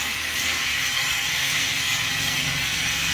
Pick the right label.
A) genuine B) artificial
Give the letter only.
B